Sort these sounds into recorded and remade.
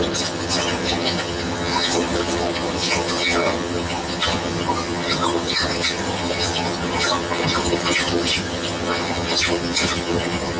remade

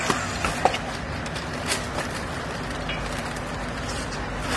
recorded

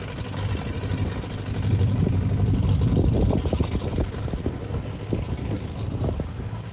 recorded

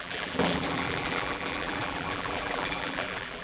remade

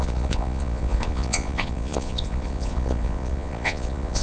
remade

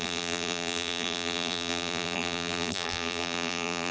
remade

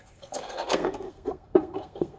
remade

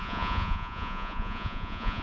remade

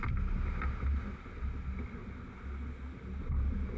recorded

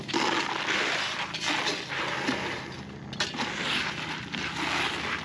recorded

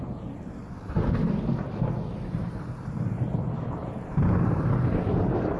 remade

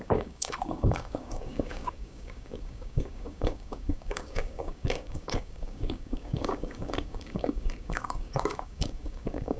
remade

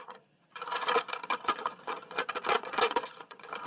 remade